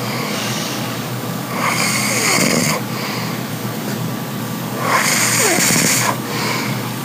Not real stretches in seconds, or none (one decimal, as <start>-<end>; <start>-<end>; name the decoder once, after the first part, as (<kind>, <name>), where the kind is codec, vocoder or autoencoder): 0.0-2.6 (codec, DAC); 3.5-3.9; 4.4-5.1; 5.9-7.0

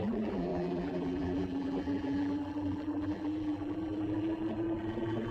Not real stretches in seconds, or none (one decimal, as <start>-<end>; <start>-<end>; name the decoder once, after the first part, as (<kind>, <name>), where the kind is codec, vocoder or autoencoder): 0.0-5.3 (vocoder, BigVGAN v2)

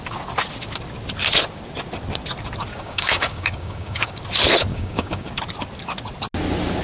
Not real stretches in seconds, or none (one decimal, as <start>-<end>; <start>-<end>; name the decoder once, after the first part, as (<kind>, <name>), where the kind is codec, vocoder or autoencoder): 2.7-4.2 (codec, DAC); 4.7-5.3

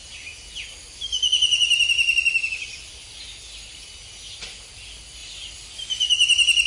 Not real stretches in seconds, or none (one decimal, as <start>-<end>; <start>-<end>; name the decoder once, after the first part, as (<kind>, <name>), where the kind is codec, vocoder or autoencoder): none

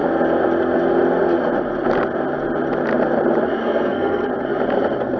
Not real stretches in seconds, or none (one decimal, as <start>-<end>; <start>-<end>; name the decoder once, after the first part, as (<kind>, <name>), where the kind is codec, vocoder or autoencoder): 3.6-4.3 (codec, SNAC)

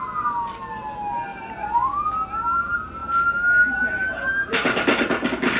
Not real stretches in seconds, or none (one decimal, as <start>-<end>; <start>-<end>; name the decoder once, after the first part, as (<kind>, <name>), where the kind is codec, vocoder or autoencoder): none

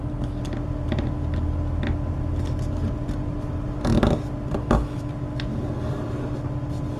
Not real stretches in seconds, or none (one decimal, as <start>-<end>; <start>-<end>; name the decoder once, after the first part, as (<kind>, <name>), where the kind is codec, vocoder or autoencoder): 4.6-5.1 (autoencoder, DAC-VAE)

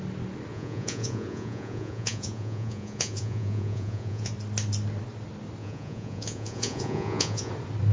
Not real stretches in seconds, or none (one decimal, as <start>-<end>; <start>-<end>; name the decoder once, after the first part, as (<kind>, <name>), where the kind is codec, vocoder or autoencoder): 0.5-4.3 (vocoder, Vocos); 5.6-7.5